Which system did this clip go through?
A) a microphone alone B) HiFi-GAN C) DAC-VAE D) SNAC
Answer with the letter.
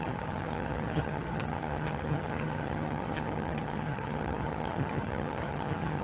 B